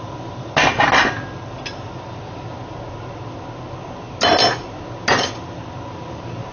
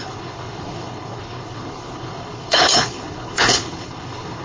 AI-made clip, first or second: second